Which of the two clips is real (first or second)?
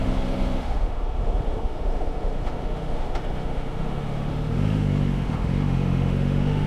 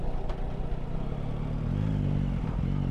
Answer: second